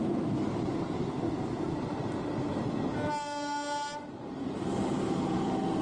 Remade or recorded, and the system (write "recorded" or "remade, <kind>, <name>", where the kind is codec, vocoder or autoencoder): recorded